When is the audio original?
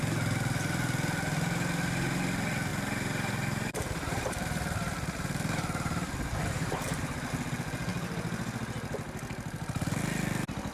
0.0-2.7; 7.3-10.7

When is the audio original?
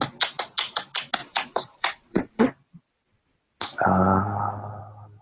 0.0-1.2; 2.4-5.2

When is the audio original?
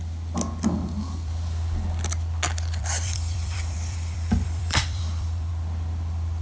0.0-2.8; 5.5-6.4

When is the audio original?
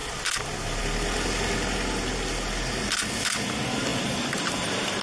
0.0-3.9